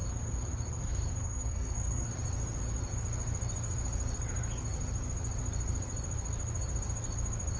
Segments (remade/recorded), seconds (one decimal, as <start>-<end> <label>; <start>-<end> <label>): 0.0-1.2 recorded; 1.2-2.1 remade; 2.1-7.6 recorded